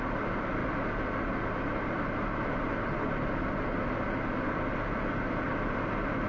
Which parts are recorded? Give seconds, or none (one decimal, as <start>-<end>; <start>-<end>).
0.0-6.3